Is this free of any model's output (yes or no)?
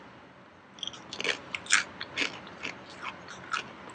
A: yes